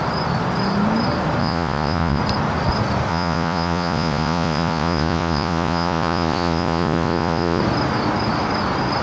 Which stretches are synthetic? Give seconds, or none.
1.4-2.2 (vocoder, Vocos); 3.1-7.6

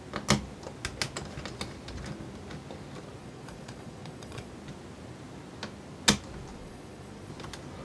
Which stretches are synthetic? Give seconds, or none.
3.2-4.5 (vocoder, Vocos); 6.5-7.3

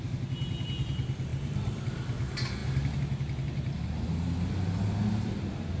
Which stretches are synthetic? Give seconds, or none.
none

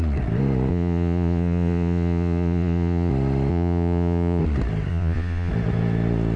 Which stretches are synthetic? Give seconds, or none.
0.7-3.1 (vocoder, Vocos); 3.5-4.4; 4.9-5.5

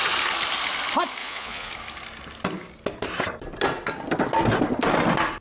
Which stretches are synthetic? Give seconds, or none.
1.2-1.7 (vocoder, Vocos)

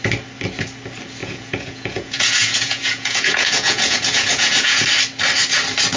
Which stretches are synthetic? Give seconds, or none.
1.2-4.8 (vocoder, Vocos)

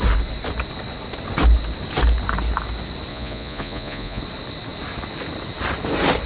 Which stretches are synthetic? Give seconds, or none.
3.1-4.2 (vocoder, Vocos)